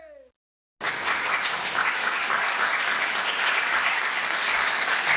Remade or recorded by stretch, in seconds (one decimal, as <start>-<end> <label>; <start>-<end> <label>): 0.0-1.8 recorded; 1.8-5.2 remade